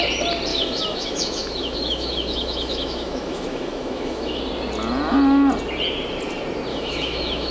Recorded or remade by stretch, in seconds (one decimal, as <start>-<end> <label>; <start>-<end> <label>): 0.0-0.5 recorded; 0.5-4.4 remade; 4.4-6.7 recorded; 6.7-7.5 remade